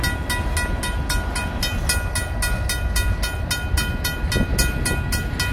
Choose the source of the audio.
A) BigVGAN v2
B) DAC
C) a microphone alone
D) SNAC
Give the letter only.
C